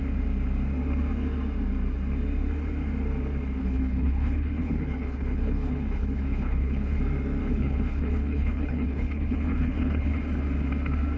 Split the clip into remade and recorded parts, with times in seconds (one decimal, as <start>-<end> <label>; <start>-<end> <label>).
0.0-3.6 recorded; 3.6-7.0 remade; 7.0-7.4 recorded; 7.4-10.2 remade; 10.2-11.2 recorded